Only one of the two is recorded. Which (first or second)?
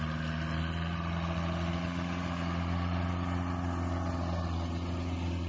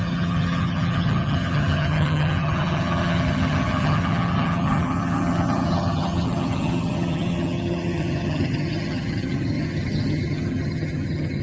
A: first